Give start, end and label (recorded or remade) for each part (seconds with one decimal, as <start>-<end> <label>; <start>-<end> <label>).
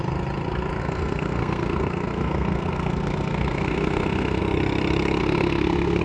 0.0-0.8 recorded; 0.8-4.4 remade; 4.4-5.2 recorded; 5.2-6.0 remade